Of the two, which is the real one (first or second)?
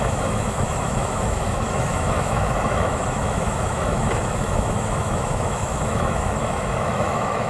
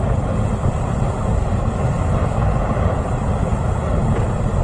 second